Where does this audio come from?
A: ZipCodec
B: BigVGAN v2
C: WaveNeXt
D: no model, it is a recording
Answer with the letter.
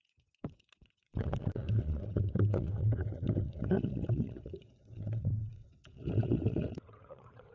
C